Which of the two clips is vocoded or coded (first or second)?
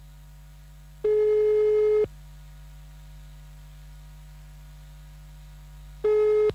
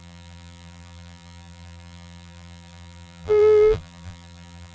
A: second